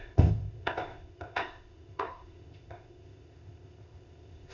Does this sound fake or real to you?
fake